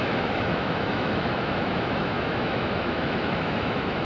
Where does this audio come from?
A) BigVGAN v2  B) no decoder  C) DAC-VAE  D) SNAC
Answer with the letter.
C